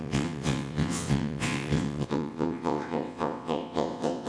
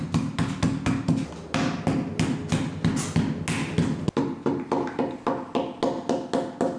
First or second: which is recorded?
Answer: second